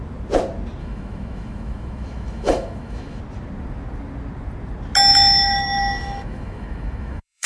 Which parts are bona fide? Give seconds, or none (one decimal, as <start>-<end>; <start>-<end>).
0.0-0.8; 3.2-5.1